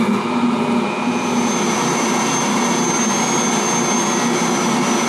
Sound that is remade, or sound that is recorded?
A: recorded